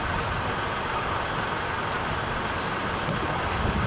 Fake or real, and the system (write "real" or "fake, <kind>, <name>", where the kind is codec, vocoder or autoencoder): real